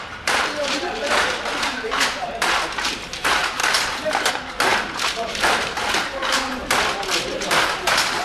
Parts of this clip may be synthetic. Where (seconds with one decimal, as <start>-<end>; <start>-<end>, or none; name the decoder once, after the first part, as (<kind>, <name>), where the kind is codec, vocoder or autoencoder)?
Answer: 0.0-3.6 (vocoder, BigVGAN v2); 4.3-6.6; 7.3-8.2